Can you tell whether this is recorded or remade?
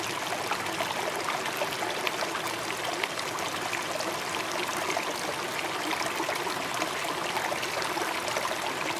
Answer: recorded